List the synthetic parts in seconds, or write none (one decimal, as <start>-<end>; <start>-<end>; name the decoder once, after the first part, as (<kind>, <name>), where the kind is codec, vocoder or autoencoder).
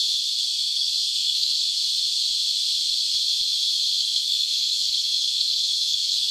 0.5-1.8 (codec, SNAC); 4.0-6.3